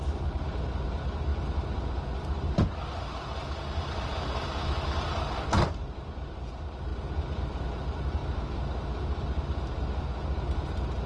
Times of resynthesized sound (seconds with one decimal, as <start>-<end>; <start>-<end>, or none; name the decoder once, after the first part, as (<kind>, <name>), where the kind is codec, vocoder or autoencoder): none